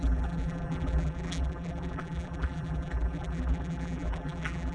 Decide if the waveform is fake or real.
fake